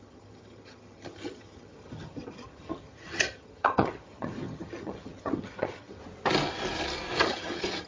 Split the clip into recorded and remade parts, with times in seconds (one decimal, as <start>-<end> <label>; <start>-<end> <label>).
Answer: 0.0-6.0 remade; 6.0-7.2 recorded; 7.2-7.9 remade